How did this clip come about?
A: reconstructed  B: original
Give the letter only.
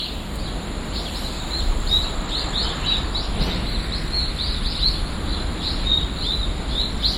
B